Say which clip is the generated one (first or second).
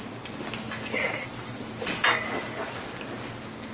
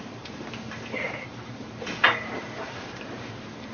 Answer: second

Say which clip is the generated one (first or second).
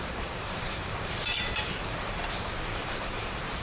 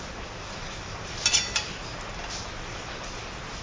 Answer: first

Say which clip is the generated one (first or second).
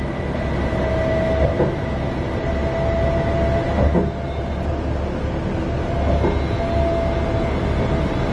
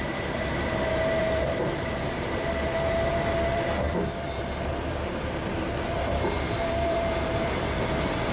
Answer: second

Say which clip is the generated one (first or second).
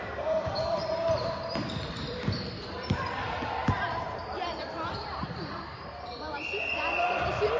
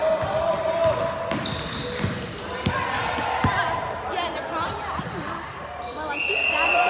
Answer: first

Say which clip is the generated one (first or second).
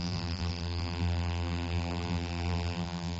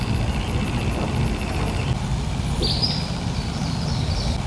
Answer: first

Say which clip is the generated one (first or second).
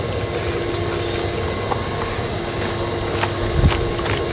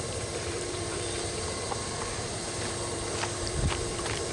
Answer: second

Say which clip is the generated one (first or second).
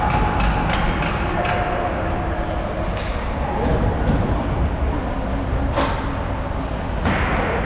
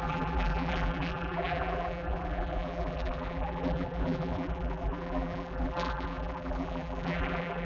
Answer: second